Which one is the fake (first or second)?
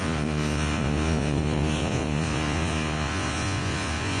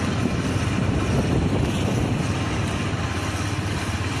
first